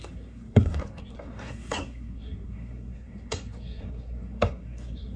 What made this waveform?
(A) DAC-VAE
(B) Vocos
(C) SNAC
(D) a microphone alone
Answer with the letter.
C